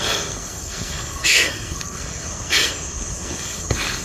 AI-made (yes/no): yes